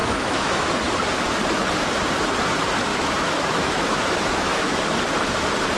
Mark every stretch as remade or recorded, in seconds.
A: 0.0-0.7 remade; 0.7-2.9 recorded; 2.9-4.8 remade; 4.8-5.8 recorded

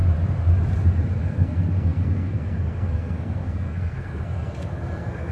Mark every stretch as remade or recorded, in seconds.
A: 0.0-1.2 recorded; 1.2-5.3 remade